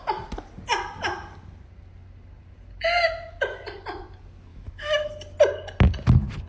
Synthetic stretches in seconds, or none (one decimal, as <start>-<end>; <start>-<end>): 4.5-5.1

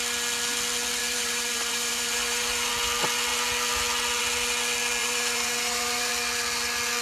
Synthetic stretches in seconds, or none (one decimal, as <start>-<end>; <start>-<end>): 1.0-2.7; 5.0-6.1

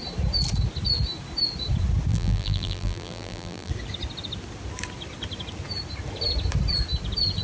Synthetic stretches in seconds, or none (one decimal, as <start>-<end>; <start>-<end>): 2.1-3.7

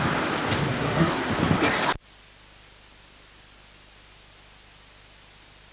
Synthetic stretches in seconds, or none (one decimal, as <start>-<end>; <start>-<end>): 0.7-1.3

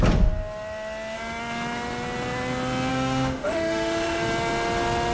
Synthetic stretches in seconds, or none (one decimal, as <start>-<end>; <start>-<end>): 2.9-4.2

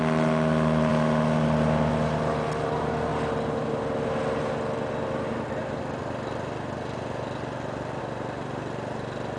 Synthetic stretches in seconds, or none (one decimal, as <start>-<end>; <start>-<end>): none

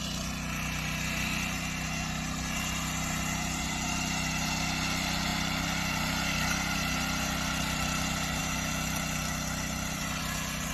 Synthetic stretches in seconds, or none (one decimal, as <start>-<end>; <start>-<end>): 8.4-10.2